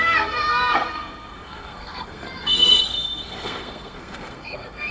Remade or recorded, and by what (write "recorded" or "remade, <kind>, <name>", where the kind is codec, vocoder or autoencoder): remade, codec, SNAC